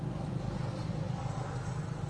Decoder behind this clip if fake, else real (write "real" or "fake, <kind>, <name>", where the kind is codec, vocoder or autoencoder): real